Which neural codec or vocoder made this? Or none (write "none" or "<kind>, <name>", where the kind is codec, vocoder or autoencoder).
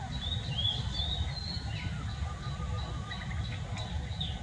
none